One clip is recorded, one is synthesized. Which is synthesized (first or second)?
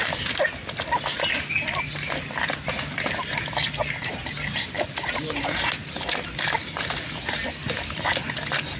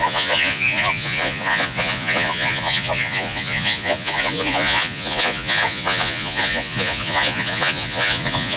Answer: second